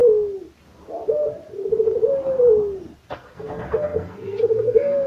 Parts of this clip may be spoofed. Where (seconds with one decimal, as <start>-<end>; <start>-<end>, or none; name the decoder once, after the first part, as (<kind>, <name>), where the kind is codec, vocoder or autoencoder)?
3.1-5.1 (codec, SNAC)